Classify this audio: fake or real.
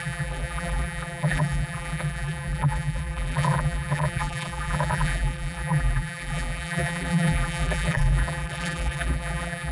fake